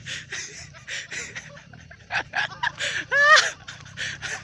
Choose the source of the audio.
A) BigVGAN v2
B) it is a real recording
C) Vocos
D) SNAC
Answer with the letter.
B